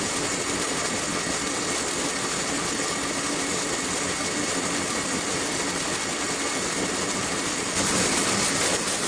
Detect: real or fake real